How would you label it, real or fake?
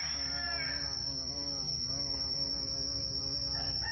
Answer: real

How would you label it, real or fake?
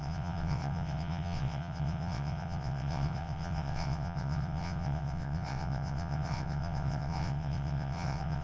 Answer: fake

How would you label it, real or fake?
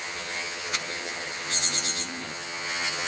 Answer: fake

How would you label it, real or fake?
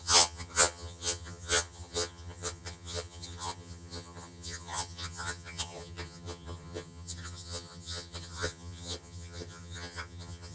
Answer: fake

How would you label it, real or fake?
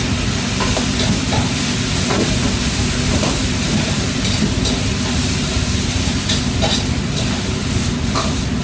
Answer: real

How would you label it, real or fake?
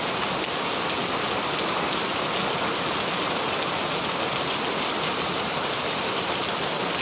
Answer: real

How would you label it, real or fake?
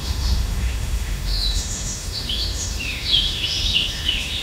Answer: fake